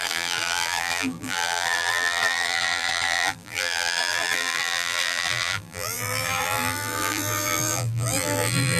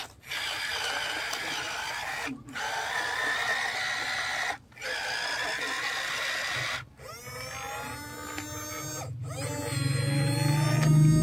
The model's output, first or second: first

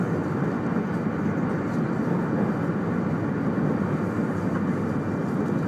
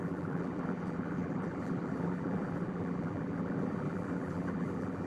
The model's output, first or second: second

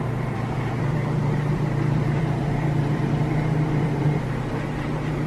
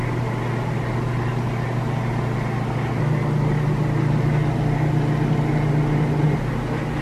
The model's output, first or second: first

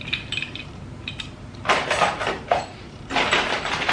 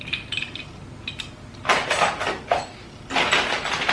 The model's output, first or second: first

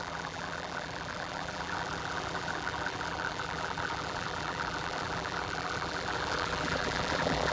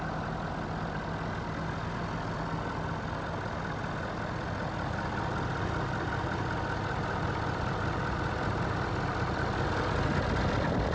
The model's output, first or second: first